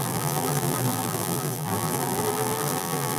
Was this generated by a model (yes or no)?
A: yes